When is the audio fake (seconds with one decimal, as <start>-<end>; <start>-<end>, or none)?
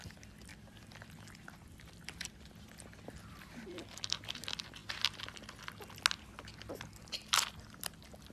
0.5-4.3; 4.8-5.6